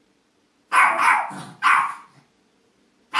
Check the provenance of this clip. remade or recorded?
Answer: recorded